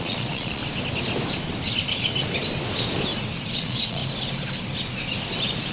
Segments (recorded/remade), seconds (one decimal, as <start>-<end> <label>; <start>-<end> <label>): 0.0-0.6 remade; 0.6-3.6 recorded; 3.6-4.0 remade; 4.0-5.7 recorded